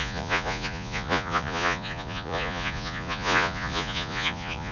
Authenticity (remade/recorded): remade